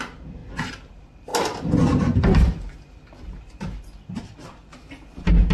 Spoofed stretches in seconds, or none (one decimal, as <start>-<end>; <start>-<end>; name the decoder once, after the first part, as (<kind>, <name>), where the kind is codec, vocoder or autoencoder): 0.0-0.4 (vocoder, BigVGAN v2); 0.9-1.3; 4.2-5.5